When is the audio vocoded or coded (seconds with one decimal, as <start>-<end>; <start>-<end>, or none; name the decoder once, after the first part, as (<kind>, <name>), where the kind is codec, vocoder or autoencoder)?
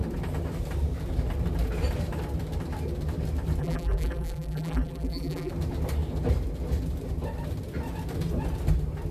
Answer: 3.6-5.5 (vocoder, BigVGAN v2)